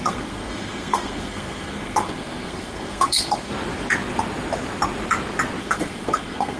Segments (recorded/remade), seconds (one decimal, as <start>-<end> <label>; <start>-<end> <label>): 0.0-3.5 remade; 3.5-5.6 recorded; 5.6-6.6 remade